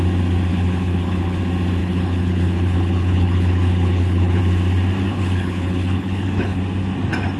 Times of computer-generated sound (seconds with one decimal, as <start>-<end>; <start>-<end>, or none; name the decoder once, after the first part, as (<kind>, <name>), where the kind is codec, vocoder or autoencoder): 0.5-1.4 (codec, HILCodec); 1.8-4.4; 5.1-6.6